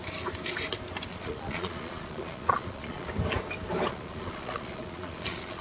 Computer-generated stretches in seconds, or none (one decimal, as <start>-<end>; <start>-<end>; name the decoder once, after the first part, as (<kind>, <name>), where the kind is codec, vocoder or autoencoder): 1.1-3.1 (vocoder, Vocos); 3.9-5.6